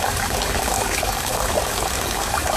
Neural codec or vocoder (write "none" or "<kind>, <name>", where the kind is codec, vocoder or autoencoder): codec, DAC